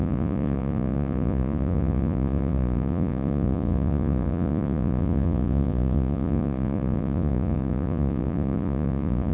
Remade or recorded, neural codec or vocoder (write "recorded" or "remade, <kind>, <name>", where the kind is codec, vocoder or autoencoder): remade, vocoder, Vocos